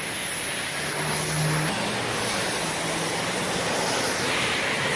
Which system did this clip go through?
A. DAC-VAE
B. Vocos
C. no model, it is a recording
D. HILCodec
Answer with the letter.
C